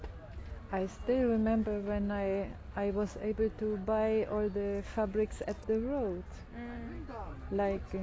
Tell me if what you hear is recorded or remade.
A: recorded